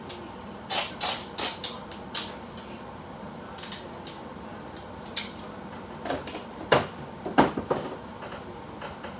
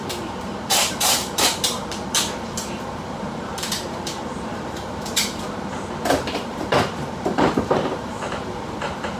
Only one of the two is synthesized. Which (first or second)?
second